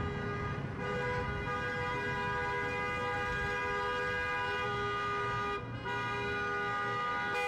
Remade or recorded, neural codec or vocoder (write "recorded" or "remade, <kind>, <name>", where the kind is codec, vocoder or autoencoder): recorded